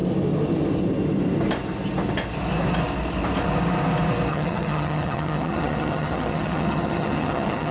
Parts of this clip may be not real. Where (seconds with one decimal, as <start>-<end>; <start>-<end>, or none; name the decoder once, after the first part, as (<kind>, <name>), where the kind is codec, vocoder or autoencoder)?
4.3-7.7 (vocoder, HiFi-GAN)